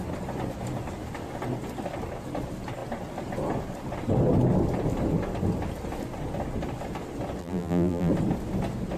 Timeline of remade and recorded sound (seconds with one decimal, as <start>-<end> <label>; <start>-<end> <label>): 0.0-7.4 recorded; 7.4-8.1 remade; 8.1-9.0 recorded